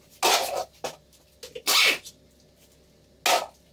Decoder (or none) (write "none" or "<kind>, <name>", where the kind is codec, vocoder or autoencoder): none